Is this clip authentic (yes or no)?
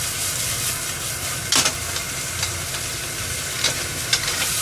yes